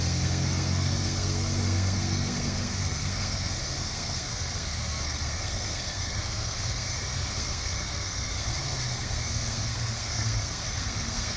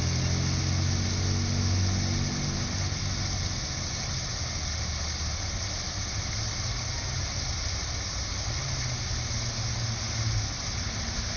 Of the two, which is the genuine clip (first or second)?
second